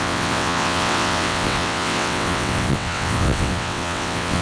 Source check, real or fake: fake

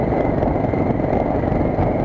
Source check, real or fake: real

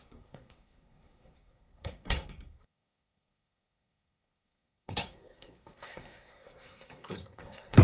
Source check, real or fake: fake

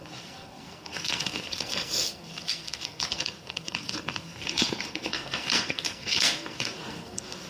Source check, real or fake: fake